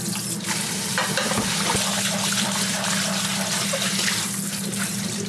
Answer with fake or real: real